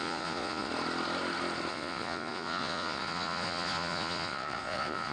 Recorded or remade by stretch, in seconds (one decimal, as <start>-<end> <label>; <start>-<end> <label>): 0.0-0.7 remade; 0.7-1.7 recorded; 1.7-5.1 remade